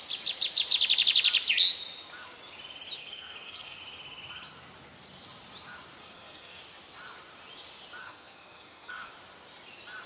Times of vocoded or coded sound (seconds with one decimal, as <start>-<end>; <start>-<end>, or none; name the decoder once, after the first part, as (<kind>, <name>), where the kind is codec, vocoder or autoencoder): 3.0-3.8 (codec, SNAC); 6.0-6.6; 8.0-9.1